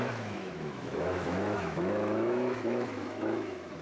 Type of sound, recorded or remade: remade